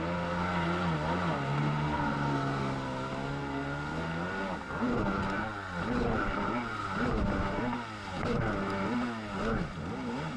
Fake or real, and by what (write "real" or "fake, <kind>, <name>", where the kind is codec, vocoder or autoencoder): real